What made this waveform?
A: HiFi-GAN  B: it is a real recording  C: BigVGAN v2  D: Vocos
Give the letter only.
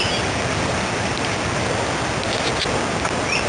B